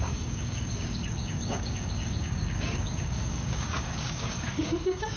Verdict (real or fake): fake